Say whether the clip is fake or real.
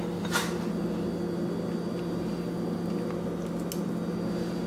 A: real